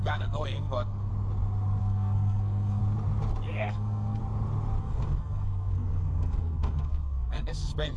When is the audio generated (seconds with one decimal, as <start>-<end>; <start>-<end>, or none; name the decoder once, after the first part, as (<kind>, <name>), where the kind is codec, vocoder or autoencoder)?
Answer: 0.0-1.1 (codec, SNAC); 1.8-2.8; 3.5-4.2; 4.8-8.0